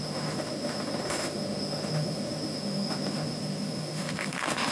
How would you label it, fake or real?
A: fake